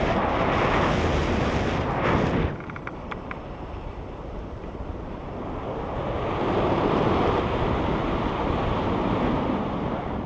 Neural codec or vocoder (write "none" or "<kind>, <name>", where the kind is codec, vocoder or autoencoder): none